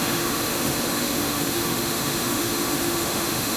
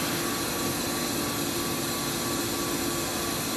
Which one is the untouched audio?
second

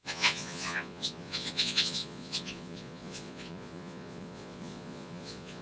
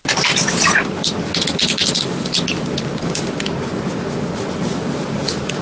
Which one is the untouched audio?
second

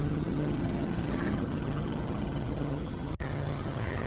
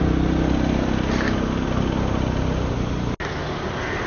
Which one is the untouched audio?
second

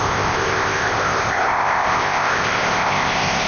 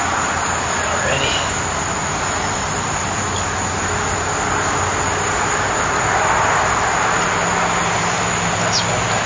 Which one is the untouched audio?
second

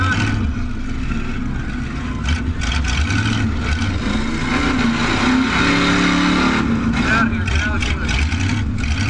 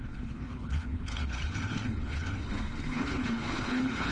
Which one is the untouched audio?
first